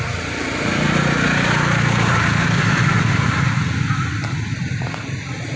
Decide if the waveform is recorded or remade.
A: recorded